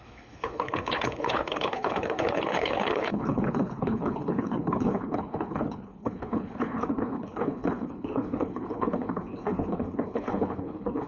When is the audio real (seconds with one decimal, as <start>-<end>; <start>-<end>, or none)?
none